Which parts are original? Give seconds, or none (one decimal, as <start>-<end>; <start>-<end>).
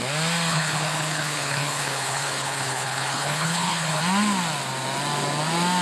0.0-0.5; 4.0-5.8